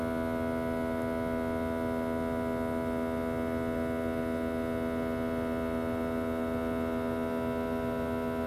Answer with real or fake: real